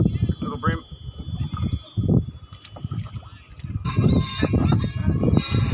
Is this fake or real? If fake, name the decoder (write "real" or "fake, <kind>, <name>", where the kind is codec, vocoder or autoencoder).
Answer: real